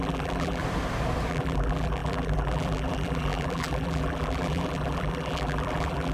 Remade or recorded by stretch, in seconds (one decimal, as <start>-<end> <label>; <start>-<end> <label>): 0.0-0.6 remade; 0.6-1.3 recorded; 1.3-6.1 remade